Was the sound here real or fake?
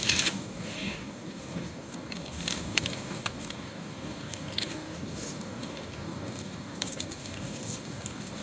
fake